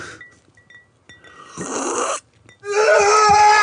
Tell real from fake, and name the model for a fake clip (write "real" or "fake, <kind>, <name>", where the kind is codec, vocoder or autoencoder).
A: real